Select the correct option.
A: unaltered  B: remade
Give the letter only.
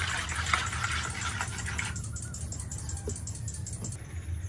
A